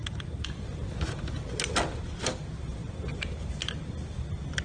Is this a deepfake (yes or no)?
no